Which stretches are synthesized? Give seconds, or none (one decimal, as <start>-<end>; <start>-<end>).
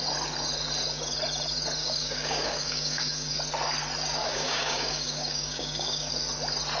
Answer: 1.8-3.3; 4.2-6.1